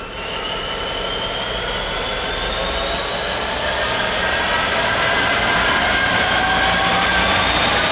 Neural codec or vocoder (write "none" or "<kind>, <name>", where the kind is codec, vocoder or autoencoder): none